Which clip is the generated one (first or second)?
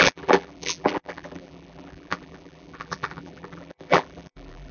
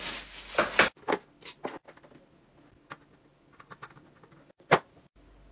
first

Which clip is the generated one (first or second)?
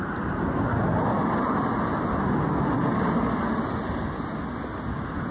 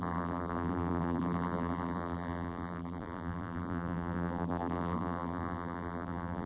second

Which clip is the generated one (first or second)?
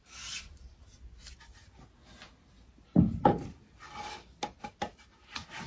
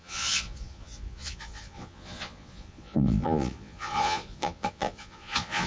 second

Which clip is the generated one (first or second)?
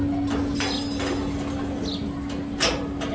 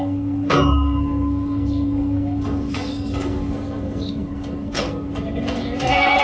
second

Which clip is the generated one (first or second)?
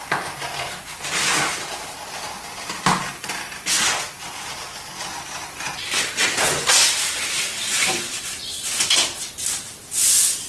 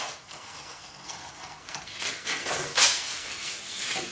second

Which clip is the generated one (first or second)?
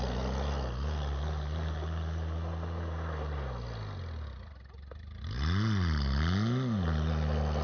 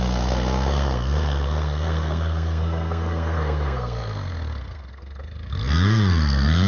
second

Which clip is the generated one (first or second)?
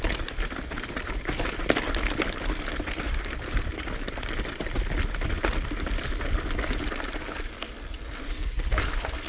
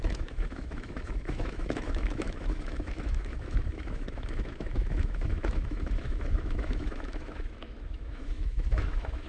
second